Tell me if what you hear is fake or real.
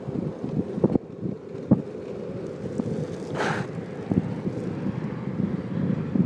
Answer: real